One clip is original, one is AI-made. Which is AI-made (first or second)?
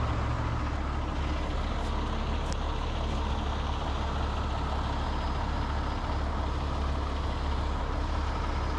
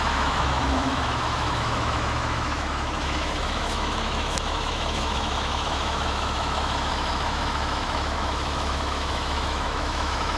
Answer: second